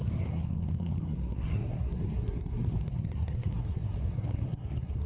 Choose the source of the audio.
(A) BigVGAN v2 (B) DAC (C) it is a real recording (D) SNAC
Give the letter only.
D